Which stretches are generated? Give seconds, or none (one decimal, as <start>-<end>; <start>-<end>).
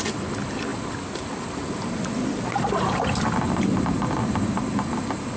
none